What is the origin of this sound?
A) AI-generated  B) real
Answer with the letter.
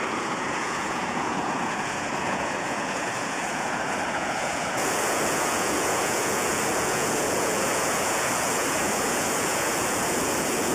A